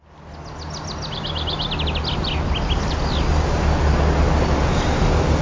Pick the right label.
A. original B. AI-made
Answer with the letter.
A